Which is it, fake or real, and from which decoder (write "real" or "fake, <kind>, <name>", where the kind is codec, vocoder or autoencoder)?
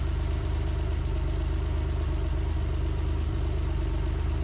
real